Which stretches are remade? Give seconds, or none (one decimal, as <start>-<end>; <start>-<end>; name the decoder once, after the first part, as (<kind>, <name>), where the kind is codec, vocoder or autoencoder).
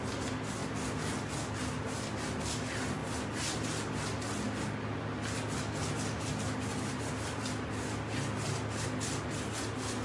none